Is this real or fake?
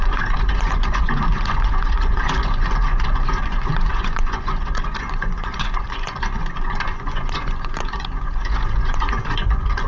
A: fake